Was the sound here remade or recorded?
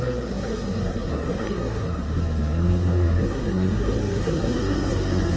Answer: remade